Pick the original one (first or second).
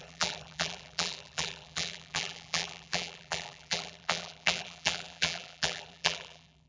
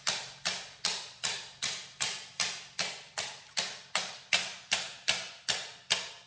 second